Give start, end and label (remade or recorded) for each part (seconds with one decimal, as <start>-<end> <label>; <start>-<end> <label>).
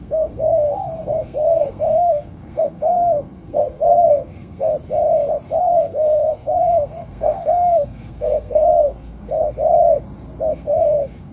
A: 0.0-4.7 remade; 4.7-5.6 recorded; 5.6-9.3 remade; 9.3-10.5 recorded; 10.5-11.3 remade